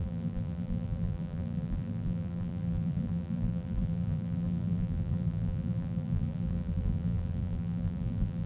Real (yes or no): no